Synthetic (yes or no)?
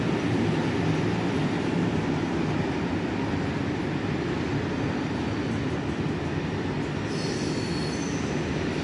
no